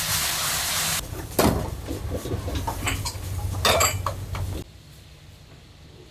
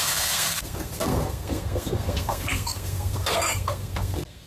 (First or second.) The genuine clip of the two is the first